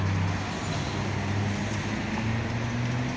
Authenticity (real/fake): real